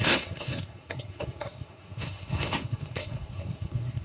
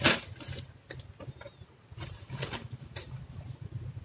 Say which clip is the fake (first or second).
first